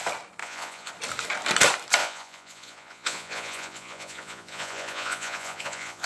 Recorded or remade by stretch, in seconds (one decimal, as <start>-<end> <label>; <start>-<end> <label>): 0.0-0.4 recorded; 0.4-0.9 remade; 0.9-2.0 recorded; 2.0-6.1 remade